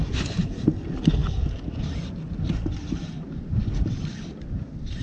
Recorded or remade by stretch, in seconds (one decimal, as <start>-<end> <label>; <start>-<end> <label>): 0.0-5.0 recorded